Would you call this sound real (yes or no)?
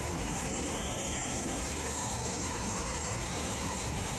no